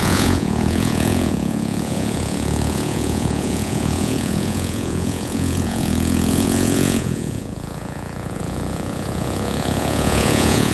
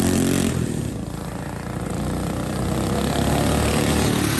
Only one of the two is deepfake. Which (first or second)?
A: first